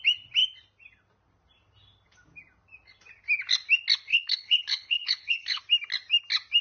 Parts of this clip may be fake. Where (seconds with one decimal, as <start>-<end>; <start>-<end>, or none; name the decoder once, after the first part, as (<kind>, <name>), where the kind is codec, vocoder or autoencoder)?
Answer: 4.1-5.6 (codec, HILCodec)